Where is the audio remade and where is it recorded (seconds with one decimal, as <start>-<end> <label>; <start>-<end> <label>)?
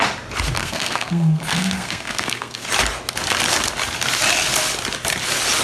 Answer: 0.0-0.6 recorded; 0.6-2.7 remade; 2.7-5.6 recorded